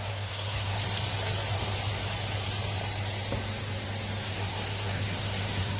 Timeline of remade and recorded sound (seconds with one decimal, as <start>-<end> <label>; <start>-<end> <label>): 0.0-0.8 remade; 0.8-4.3 recorded; 4.3-5.8 remade